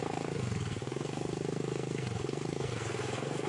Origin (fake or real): fake